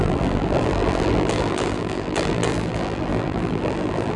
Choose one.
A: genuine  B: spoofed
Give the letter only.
B